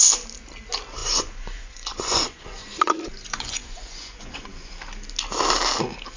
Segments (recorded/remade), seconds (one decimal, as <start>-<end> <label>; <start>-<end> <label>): 0.0-1.0 recorded; 1.0-4.7 remade; 4.7-6.2 recorded